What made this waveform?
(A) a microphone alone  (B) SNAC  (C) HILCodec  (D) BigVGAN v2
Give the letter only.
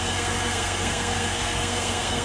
B